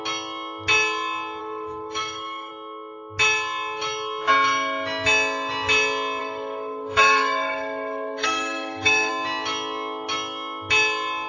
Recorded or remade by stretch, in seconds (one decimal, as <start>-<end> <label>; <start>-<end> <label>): 0.0-1.4 recorded; 1.4-2.5 remade; 2.5-6.2 recorded; 6.2-9.1 remade; 9.1-11.3 recorded